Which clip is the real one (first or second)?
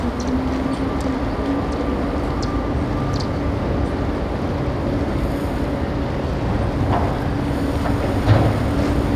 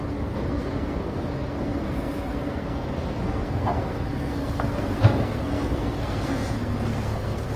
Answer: first